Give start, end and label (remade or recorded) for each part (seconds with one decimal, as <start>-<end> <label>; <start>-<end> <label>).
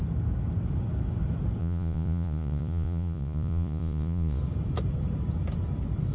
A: 0.0-1.6 recorded; 1.6-4.4 remade; 4.4-6.1 recorded